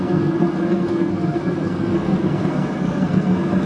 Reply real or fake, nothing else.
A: fake